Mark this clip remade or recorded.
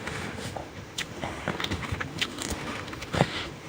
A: remade